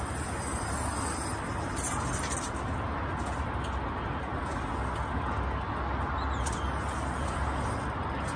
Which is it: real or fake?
real